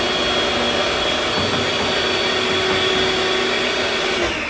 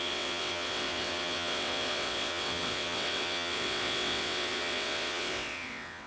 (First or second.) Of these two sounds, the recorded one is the first